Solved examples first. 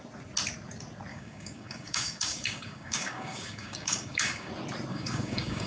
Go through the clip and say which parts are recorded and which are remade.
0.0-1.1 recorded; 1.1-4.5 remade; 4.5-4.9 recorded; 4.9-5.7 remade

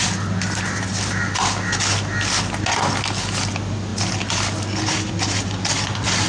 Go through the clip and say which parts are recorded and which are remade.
0.0-6.3 recorded

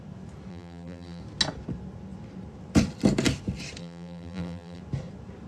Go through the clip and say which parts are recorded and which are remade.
0.0-0.5 recorded; 0.5-1.2 remade; 1.2-3.8 recorded; 3.8-4.8 remade; 4.8-5.5 recorded